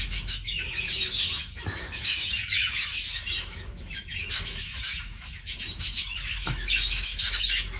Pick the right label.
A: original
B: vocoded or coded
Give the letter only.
B